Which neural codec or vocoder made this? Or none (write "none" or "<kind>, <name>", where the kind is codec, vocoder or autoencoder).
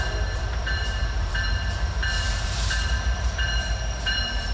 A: vocoder, BigVGAN v2